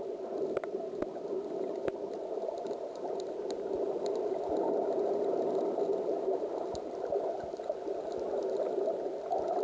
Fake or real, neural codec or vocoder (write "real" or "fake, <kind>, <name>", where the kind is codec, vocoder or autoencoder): real